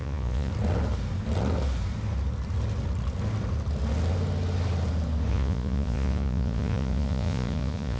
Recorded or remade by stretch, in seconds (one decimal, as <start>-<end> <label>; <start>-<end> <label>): 0.0-0.5 remade; 0.5-5.3 recorded; 5.3-8.0 remade